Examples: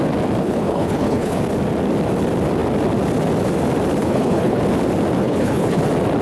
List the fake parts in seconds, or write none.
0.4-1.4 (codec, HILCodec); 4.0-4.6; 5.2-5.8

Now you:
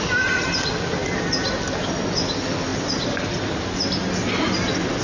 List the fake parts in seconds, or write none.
none